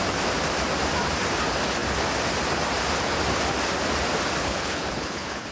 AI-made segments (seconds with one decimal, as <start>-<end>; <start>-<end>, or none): 4.4-5.5